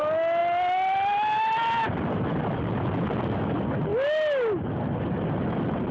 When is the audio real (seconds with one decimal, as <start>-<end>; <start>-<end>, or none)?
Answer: 0.0-5.9